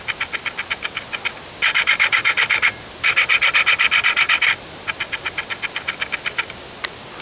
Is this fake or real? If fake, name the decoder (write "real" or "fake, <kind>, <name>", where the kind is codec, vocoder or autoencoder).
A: real